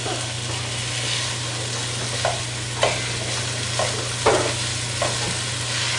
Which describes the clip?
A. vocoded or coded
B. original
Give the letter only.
B